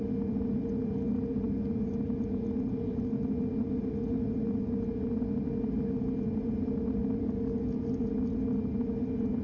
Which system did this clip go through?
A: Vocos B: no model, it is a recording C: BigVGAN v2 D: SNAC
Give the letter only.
B